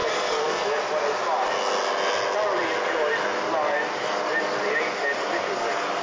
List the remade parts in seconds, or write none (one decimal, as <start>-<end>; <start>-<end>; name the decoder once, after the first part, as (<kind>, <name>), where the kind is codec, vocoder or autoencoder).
0.0-0.8 (codec, SNAC)